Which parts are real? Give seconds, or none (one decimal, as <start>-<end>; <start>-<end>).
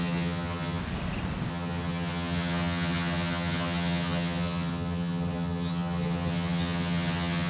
0.8-1.5